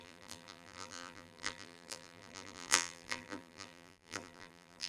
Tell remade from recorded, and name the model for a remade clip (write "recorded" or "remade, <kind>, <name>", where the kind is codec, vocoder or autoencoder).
remade, vocoder, BigVGAN v2